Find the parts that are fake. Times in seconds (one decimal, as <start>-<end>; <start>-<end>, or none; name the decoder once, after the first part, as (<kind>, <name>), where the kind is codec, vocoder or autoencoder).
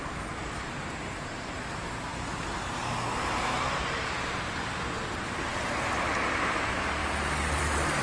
0.0-7.0 (vocoder, BigVGAN v2); 7.6-8.0